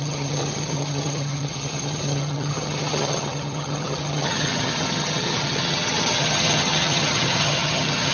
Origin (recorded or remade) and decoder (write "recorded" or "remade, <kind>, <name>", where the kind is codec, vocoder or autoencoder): remade, vocoder, HiFi-GAN